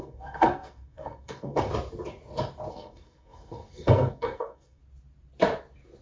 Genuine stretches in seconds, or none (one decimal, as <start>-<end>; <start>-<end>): 1.7-2.7; 4.8-6.0